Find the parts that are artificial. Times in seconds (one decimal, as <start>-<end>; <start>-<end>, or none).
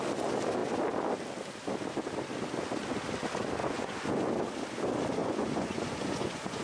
3.6-4.3; 5.2-6.6